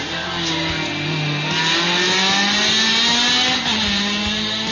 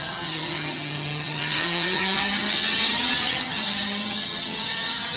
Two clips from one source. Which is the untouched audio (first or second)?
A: first